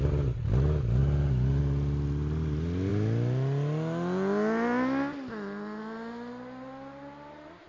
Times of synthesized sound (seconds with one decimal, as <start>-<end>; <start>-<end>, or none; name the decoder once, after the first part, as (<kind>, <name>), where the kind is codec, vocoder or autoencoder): none